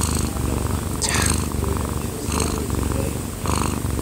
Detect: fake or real real